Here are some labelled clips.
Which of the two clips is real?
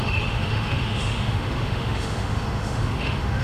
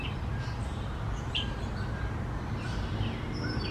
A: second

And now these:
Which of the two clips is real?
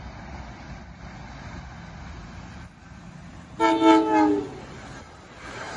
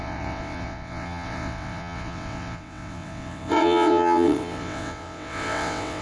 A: first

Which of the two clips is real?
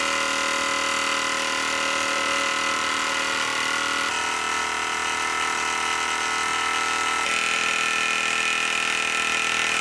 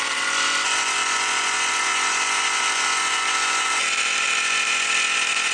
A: first